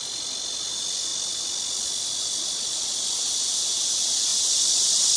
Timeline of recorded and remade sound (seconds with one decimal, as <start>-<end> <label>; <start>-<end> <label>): 0.0-5.2 recorded